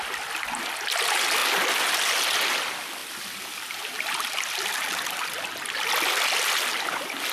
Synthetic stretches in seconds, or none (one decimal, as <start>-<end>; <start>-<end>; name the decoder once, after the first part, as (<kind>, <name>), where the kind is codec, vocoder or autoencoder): none